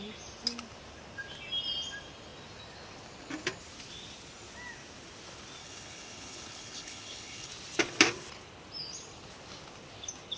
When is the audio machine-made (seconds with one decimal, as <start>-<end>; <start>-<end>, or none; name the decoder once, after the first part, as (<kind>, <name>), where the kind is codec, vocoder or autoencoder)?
5.6-7.5 (codec, HILCodec)